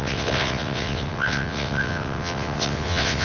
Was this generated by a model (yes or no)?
yes